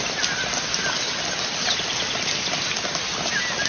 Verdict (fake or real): real